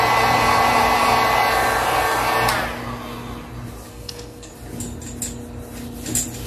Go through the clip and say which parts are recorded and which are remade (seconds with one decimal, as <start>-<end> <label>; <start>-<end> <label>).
0.0-3.9 recorded; 3.9-4.5 remade; 4.5-6.5 recorded